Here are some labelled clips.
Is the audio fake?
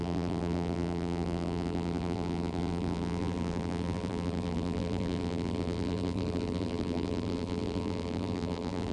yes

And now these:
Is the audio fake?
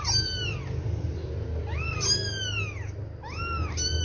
no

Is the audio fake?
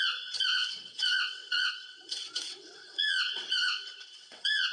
yes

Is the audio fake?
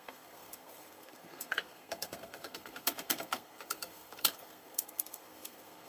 yes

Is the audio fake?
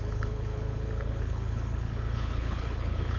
yes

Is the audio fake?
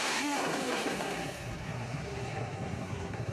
yes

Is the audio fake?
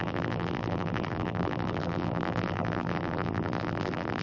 yes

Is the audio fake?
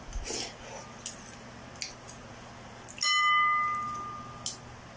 no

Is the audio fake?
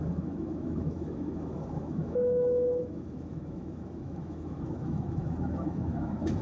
yes